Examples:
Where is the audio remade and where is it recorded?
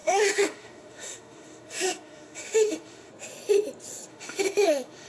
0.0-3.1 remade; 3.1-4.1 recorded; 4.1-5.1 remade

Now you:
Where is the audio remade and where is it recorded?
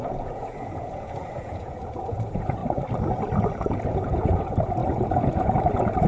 0.0-2.6 remade; 2.6-3.5 recorded; 3.5-6.1 remade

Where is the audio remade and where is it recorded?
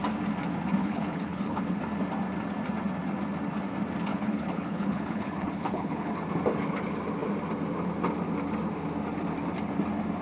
0.0-0.8 recorded; 0.8-1.8 remade; 1.8-4.1 recorded; 4.1-6.1 remade; 6.1-10.2 recorded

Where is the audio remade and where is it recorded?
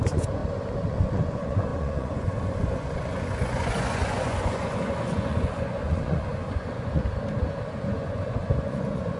0.0-0.4 remade; 0.4-0.9 recorded; 0.9-7.0 remade; 7.0-7.8 recorded; 7.8-9.2 remade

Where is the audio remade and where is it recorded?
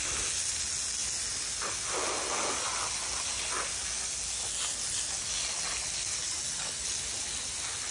0.0-7.9 recorded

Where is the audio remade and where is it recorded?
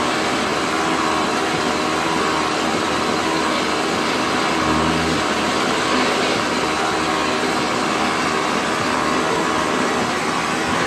0.0-10.9 recorded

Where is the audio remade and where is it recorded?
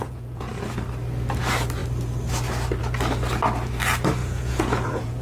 0.0-0.5 remade; 0.5-4.2 recorded; 4.2-5.2 remade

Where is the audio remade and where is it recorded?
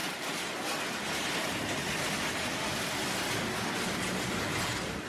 0.0-5.1 recorded